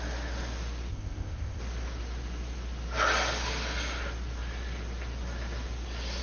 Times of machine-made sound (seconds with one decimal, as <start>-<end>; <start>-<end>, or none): 0.9-1.6